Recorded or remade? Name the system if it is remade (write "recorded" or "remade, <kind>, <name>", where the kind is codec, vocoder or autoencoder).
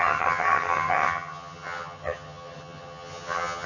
remade, vocoder, HiFi-GAN